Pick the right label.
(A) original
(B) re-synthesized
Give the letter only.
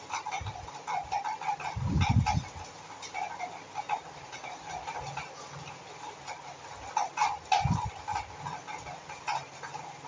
A